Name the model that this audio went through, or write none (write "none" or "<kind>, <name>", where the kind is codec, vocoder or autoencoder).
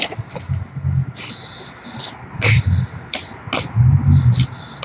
none